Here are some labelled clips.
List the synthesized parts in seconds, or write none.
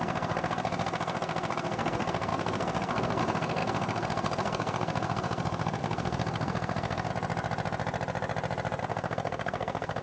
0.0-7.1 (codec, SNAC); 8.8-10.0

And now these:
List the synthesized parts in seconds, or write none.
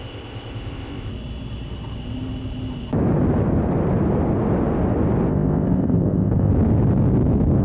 0.0-1.1 (codec, ZipCodec); 5.3-6.5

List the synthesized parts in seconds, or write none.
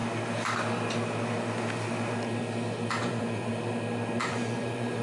3.0-3.5 (vocoder, Vocos); 4.2-5.0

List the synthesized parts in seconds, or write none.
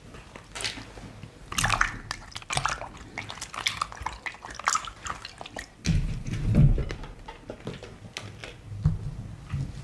none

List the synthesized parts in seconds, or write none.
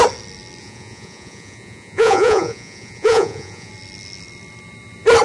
0.6-3.7 (vocoder, Vocos)